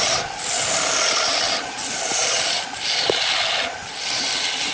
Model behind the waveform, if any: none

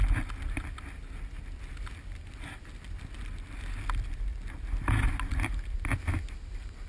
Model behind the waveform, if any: none